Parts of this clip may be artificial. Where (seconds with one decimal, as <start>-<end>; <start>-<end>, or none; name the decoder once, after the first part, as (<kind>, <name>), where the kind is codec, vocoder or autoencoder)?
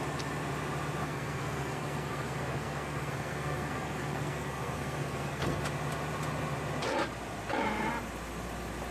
1.0-5.6 (codec, SNAC)